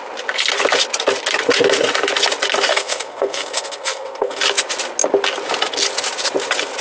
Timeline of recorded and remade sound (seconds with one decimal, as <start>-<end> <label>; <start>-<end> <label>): 0.0-2.7 recorded; 2.7-4.4 remade; 4.4-6.8 recorded